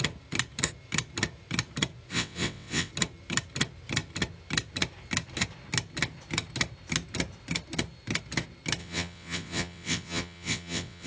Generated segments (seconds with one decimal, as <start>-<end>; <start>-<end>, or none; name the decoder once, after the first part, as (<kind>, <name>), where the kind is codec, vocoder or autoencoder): 2.1-2.9 (vocoder, WaveNeXt); 8.8-11.1